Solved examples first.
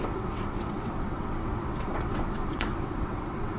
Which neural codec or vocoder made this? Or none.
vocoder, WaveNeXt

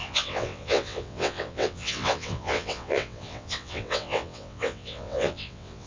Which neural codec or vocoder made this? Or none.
vocoder, WaveNeXt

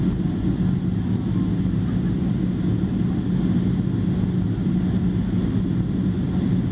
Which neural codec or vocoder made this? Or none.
none